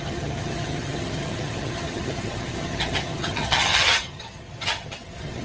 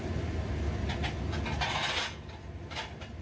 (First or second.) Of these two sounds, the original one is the second